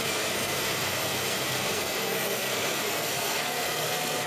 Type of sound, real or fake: fake